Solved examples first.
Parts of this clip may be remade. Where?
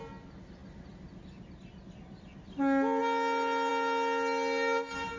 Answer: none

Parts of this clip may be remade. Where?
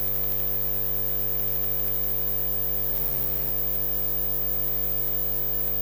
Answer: 2.9-3.5 (vocoder, BigVGAN v2)